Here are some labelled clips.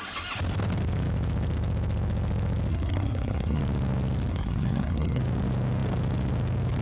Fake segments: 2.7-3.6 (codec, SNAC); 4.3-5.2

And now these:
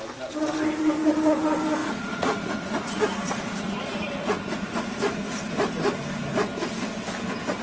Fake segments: 1.8-5.5 (vocoder, Vocos)

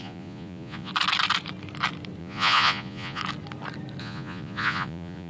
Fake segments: 0.0-0.9 (vocoder, Vocos); 2.2-3.2; 4.0-5.3

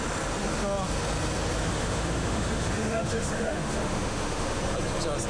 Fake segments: 1.7-4.6 (autoencoder, DAC-VAE)